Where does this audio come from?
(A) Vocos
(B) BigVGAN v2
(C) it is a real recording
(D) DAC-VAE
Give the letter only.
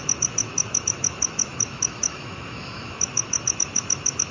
D